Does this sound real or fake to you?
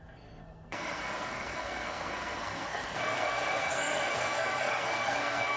fake